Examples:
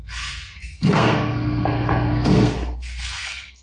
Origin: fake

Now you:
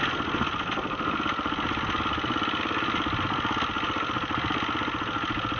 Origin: real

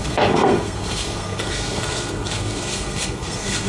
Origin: fake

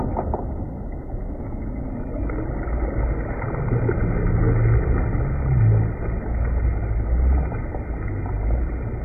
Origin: real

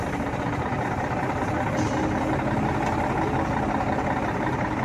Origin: real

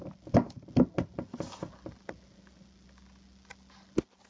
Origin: real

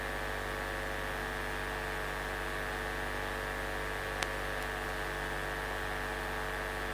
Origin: real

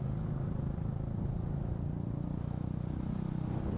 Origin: real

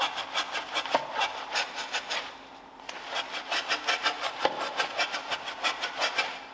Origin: real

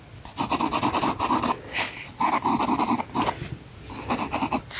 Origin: real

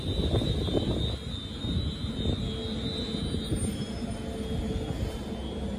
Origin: real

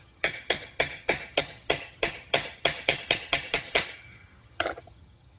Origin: fake